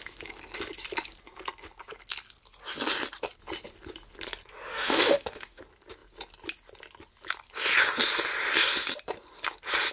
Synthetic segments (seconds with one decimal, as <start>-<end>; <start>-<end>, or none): 4.7-5.6